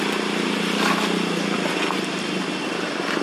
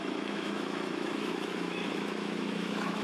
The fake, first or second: second